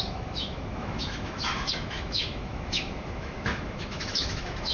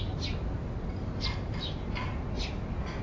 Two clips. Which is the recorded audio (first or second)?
second